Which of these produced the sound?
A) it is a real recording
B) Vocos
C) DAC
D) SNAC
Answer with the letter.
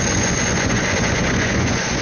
B